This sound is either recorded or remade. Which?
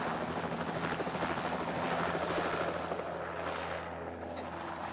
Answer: recorded